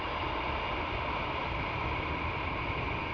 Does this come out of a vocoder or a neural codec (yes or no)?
no